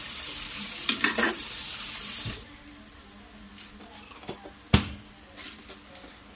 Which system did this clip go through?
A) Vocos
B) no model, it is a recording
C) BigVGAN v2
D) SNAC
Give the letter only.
C